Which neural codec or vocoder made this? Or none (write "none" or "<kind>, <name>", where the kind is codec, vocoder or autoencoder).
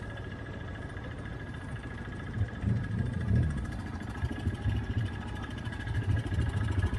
vocoder, BigVGAN v2